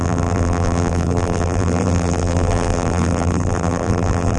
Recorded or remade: remade